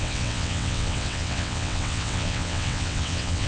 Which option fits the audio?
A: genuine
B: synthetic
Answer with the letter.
B